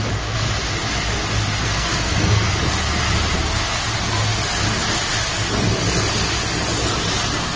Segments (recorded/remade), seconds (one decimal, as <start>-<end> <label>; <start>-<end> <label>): 0.0-1.6 recorded; 1.6-2.5 remade; 2.5-7.6 recorded